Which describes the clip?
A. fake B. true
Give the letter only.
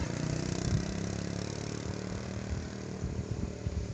A